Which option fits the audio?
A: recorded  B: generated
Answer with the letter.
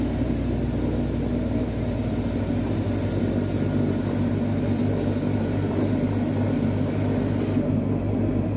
A